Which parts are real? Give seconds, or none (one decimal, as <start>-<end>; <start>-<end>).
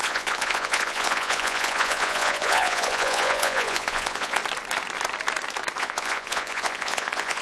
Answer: 4.4-5.8